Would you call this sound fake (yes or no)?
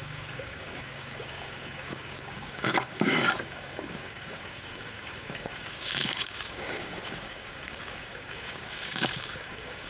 yes